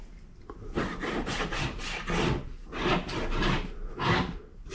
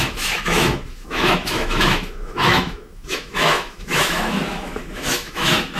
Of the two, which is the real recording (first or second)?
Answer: first